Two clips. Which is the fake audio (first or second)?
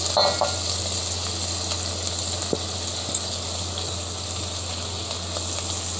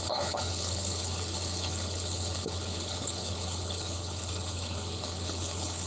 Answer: second